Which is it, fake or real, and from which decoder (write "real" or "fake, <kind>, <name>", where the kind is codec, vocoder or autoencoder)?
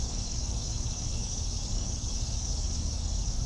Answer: fake, codec, DAC